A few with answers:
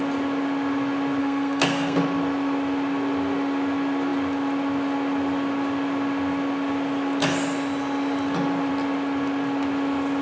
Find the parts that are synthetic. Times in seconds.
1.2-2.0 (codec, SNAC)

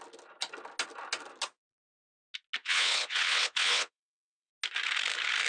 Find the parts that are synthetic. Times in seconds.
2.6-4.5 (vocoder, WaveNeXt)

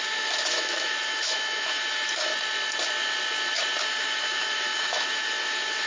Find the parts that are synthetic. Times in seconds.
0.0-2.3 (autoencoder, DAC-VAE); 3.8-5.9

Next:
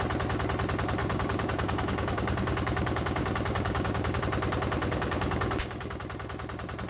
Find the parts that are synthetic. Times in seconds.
1.0-4.2 (codec, DAC); 4.8-6.0

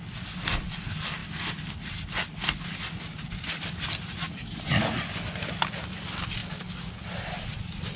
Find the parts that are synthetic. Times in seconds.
none

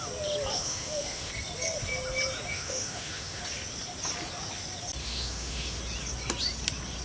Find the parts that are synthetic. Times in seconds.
0.5-1.3 (autoencoder, DAC-VAE); 2.5-3.4; 5.0-5.8